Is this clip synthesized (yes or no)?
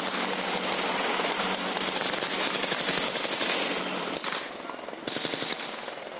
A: no